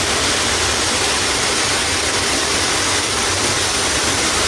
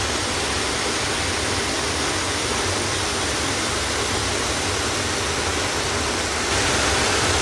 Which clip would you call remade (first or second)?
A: first